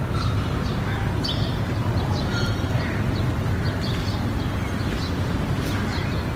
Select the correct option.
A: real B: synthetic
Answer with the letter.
A